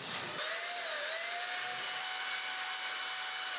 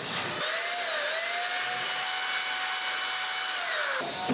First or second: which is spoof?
first